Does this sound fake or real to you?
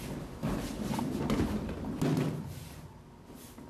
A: real